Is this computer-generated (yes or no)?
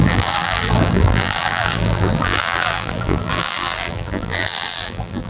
yes